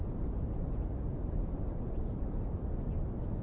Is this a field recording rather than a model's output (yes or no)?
yes